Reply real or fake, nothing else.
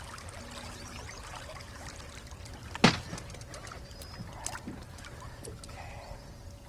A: real